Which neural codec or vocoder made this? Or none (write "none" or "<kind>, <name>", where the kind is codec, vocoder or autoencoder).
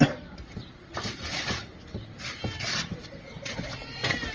none